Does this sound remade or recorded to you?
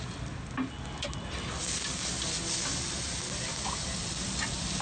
recorded